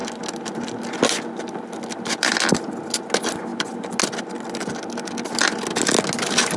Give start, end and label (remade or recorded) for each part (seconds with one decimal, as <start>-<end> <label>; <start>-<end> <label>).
0.0-6.6 recorded